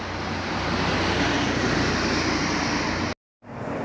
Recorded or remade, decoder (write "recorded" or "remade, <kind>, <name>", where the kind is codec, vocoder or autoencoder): recorded